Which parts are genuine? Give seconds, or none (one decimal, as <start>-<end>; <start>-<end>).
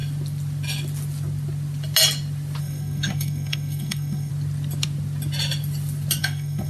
0.0-2.6; 4.3-6.2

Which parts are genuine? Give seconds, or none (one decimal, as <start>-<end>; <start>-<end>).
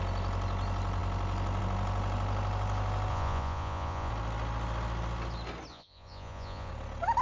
0.0-3.1; 4.1-5.7; 6.7-7.2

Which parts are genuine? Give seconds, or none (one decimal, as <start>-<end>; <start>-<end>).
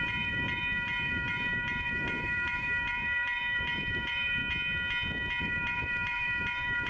4.4-5.4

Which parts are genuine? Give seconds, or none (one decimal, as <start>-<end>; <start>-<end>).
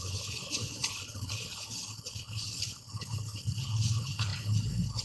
none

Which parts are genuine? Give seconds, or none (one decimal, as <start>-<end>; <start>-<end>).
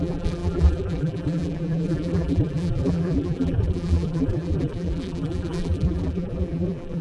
none